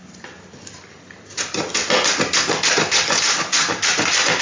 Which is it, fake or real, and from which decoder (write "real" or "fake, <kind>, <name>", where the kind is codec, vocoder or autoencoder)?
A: real